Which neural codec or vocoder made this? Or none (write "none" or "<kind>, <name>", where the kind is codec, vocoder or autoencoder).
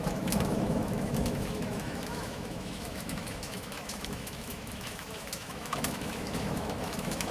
autoencoder, DAC-VAE